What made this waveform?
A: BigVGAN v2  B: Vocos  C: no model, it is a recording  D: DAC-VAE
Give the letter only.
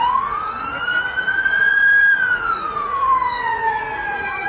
B